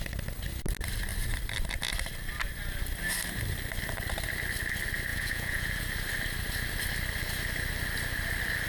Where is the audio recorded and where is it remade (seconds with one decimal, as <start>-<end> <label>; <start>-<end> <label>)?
0.0-5.1 recorded; 5.1-5.9 remade; 5.9-8.7 recorded